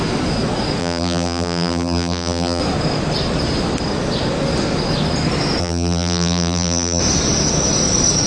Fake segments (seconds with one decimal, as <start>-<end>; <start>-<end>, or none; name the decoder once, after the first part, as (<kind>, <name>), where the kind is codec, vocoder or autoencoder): 0.8-2.6 (vocoder, BigVGAN v2); 5.6-7.0

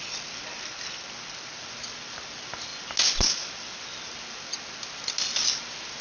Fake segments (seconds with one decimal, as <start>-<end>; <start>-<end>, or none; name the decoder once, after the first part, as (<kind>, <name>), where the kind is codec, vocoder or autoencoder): none

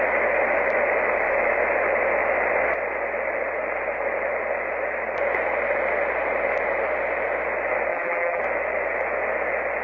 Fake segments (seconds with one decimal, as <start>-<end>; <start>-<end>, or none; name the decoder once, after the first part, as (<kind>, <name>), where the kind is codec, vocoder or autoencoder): 7.9-8.4 (vocoder, BigVGAN v2)

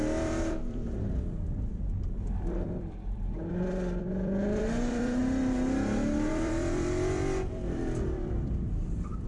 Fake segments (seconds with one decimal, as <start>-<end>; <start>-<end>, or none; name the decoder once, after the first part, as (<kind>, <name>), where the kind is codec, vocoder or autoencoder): 0.0-5.2 (vocoder, BigVGAN v2); 6.3-9.3

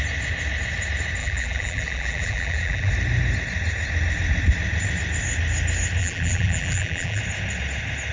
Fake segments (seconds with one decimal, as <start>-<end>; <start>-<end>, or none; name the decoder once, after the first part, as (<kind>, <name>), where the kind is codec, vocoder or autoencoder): 1.2-2.9 (vocoder, BigVGAN v2); 6.0-7.2

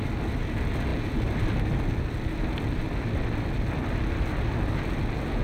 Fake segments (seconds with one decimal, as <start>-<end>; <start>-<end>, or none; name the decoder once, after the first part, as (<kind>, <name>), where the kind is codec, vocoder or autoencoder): none

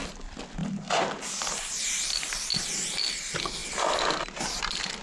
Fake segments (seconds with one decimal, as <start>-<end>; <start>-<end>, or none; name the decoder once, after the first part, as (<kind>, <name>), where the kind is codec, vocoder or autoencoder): 2.5-3.1 (vocoder, BigVGAN v2)

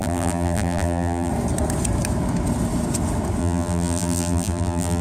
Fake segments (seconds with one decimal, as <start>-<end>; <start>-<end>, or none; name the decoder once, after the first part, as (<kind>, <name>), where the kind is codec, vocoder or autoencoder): 0.0-1.3 (vocoder, BigVGAN v2); 3.4-5.0